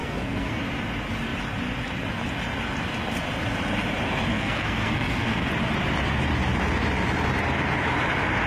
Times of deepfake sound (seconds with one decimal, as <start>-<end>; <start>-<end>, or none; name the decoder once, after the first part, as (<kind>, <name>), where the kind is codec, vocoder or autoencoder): 0.0-0.6 (codec, SNAC); 4.3-5.5